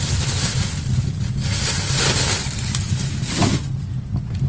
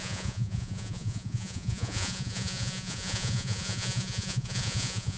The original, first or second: first